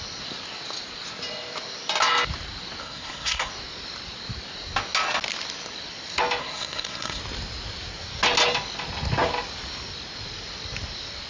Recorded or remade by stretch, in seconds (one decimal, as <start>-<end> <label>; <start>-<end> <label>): 0.0-2.8 recorded; 2.8-3.5 remade; 3.5-6.4 recorded; 6.4-7.2 remade; 7.2-11.3 recorded